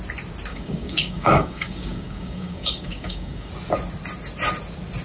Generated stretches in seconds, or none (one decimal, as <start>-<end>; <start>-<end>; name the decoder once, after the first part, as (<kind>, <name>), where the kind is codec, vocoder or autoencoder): 0.5-3.5 (codec, DAC)